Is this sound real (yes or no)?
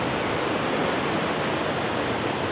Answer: yes